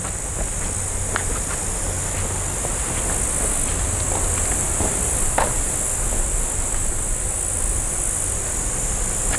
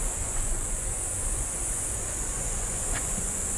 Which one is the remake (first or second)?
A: second